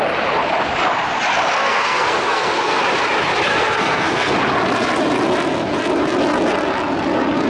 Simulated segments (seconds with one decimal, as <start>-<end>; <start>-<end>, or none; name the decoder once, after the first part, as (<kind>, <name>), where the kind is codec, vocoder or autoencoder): 1.6-2.8 (codec, SNAC); 3.5-4.3